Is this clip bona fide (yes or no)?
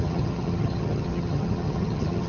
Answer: no